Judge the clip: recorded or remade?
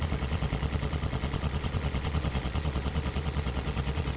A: remade